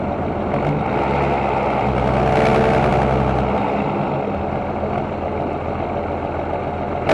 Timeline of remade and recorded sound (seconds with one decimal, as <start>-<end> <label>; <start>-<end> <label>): 0.0-7.1 recorded